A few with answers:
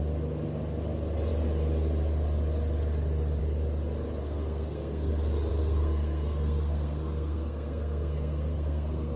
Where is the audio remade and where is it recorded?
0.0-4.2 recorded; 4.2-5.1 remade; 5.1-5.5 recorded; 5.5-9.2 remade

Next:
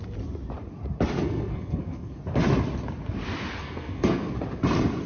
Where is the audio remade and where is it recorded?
0.0-1.2 recorded; 1.2-2.2 remade; 2.2-3.6 recorded; 3.6-4.3 remade; 4.3-5.1 recorded

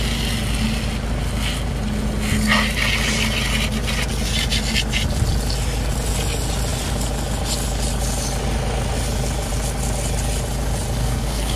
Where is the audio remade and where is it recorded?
0.0-11.0 recorded; 11.0-11.6 remade

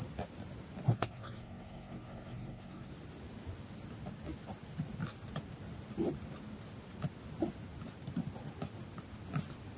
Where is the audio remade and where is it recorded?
0.0-0.9 recorded; 0.9-2.9 remade; 2.9-9.8 recorded

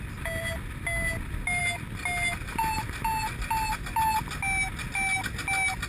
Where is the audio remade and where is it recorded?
0.0-5.9 recorded

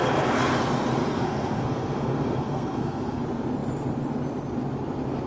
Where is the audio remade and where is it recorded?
0.0-1.0 recorded; 1.0-3.2 remade; 3.2-5.3 recorded

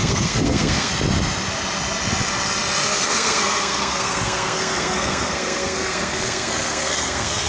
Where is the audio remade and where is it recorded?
0.0-0.9 remade; 0.9-2.9 recorded; 2.9-7.5 remade

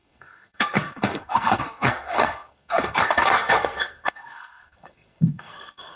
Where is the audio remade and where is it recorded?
0.0-6.0 remade